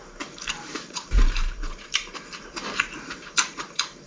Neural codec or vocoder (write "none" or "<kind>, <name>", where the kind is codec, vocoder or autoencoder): vocoder, BigVGAN v2